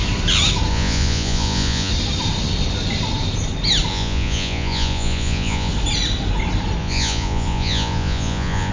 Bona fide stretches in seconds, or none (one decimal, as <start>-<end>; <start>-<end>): 0.0-0.7; 1.9-3.9; 5.7-6.8